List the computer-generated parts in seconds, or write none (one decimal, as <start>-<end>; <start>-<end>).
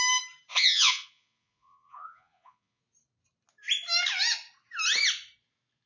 0.5-2.8